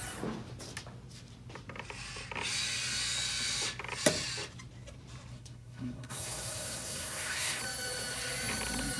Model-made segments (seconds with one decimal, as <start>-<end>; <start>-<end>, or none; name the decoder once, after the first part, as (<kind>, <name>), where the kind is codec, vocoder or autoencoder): 5.3-7.6 (codec, SNAC)